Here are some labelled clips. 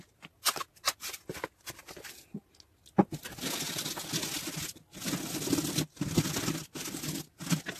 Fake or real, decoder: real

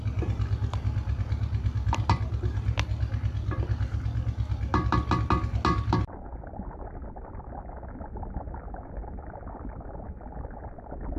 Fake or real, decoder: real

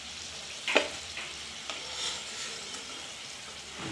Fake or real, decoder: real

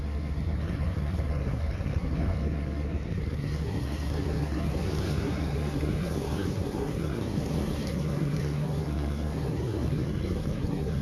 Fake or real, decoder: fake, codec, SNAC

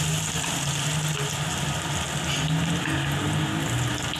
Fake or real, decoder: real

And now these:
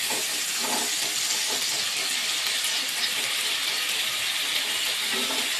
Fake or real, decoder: real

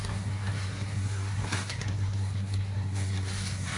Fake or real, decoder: fake, codec, SNAC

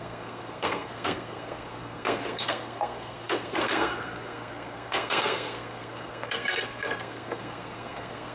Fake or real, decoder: fake, codec, SNAC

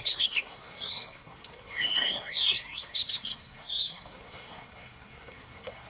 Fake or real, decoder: fake, codec, SNAC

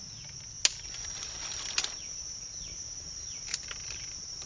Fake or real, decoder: real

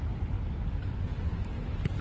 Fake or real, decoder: real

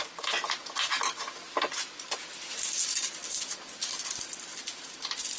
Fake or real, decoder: real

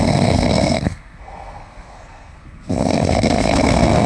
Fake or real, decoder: fake, codec, SNAC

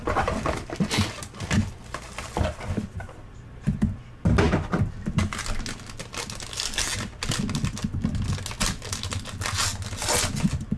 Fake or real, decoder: real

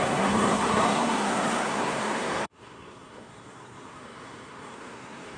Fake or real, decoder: fake, codec, SNAC